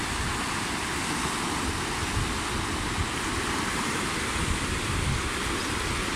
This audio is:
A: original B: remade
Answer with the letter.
A